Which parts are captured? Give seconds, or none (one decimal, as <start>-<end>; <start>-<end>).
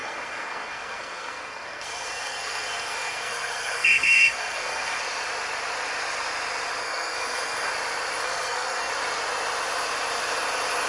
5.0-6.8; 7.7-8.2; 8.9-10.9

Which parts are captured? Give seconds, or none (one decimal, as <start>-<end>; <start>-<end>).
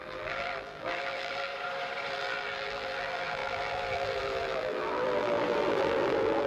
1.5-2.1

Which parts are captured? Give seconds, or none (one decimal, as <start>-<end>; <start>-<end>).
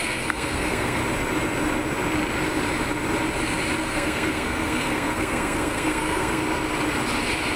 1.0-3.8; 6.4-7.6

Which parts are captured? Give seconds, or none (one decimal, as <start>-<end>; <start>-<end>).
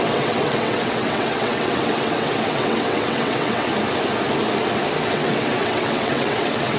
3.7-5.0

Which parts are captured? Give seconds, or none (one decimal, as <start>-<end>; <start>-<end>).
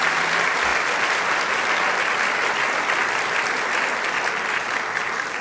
0.0-5.4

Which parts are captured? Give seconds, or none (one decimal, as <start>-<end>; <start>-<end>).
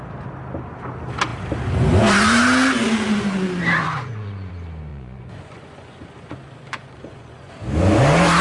0.0-3.8; 4.5-4.9; 7.5-8.4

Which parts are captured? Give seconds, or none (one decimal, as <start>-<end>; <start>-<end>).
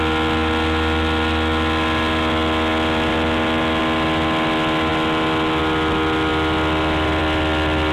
0.0-7.9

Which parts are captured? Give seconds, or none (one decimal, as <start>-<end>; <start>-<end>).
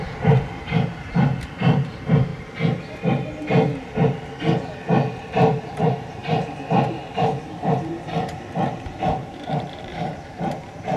2.3-5.6